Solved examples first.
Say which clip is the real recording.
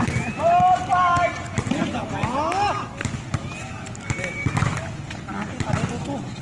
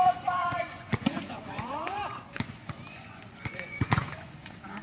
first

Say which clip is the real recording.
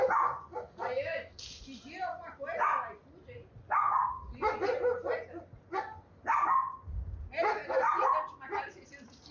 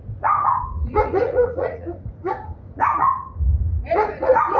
first